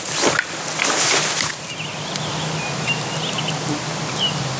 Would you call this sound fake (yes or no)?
no